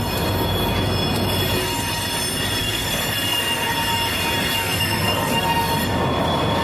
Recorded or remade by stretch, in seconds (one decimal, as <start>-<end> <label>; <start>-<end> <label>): 0.0-2.6 recorded; 2.6-3.7 remade; 3.7-4.6 recorded; 4.6-5.7 remade; 5.7-6.6 recorded